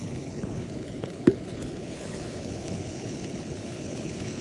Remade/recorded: remade